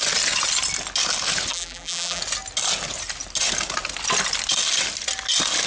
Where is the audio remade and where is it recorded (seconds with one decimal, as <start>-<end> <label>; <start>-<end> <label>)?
0.0-1.5 recorded; 1.5-2.2 remade; 2.2-5.7 recorded